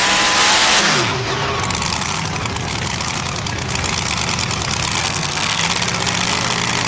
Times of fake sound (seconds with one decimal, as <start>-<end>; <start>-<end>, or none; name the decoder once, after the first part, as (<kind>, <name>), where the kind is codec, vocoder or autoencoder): 5.0-5.6 (codec, SNAC)